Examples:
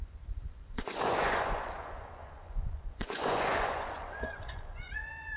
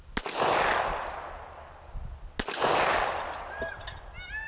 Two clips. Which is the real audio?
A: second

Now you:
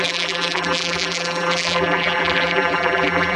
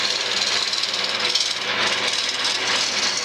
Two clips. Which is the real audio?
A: second